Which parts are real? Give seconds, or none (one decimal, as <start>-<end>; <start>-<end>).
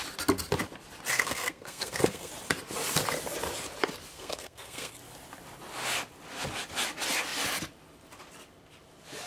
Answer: 0.0-1.1; 2.3-4.1; 4.9-9.3